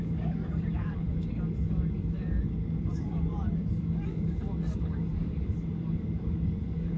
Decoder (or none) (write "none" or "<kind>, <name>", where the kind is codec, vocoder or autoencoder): codec, DAC